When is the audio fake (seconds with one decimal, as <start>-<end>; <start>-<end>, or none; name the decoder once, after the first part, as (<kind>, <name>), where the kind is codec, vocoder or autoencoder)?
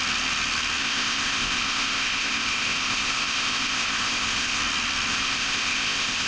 0.8-4.6 (codec, ZipCodec); 5.1-6.3